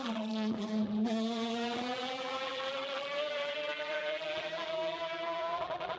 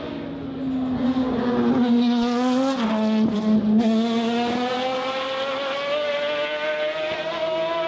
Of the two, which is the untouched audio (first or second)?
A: second